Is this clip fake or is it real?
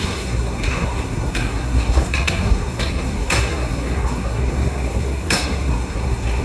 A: fake